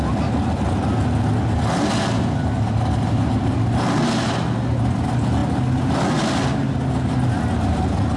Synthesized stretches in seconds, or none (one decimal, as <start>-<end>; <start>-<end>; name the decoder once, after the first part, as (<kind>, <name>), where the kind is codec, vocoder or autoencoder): none

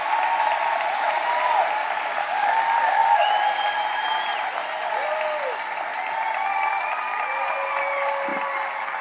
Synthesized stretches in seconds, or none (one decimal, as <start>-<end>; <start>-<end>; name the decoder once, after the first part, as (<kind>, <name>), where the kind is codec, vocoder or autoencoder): 2.2-3.3 (codec, DAC)

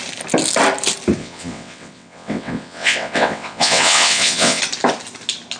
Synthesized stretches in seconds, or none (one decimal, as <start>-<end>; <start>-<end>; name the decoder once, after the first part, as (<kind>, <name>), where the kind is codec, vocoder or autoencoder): 1.2-4.6 (vocoder, WaveNeXt)

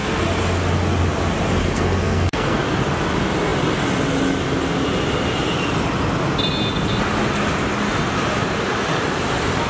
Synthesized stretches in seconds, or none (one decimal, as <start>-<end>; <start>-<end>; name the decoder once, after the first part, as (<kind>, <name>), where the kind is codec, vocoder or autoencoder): 1.6-2.6 (codec, SNAC)

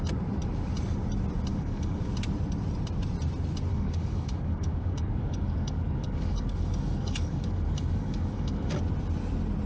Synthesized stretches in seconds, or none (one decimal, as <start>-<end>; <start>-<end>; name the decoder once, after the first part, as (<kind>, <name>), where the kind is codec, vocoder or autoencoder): 1.5-2.1 (codec, DAC); 3.7-8.8

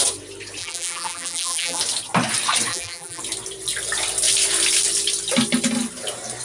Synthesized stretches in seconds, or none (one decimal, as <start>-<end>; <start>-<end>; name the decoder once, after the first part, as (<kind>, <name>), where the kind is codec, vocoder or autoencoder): 0.6-1.8 (vocoder, BigVGAN v2); 2.7-3.2

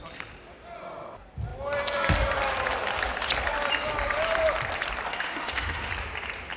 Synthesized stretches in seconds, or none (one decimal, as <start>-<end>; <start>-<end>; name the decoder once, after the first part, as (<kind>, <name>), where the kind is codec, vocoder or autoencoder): 5.1-5.9 (autoencoder, DAC-VAE)

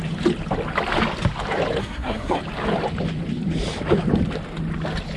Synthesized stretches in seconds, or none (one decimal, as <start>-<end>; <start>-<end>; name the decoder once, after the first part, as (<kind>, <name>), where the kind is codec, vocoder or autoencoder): 1.8-2.4 (codec, SNAC)